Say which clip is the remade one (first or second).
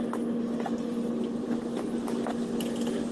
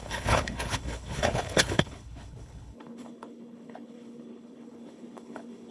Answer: second